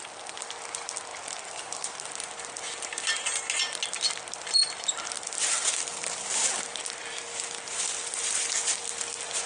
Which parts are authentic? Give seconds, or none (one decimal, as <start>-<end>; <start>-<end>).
0.0-9.5